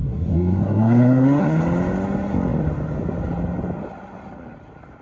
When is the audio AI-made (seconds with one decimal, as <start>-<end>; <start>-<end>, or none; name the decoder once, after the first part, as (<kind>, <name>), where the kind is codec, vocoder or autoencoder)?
0.0-1.6 (codec, SNAC)